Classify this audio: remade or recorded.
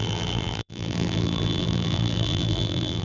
remade